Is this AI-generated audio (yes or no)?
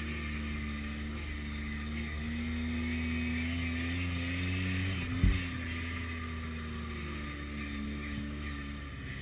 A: no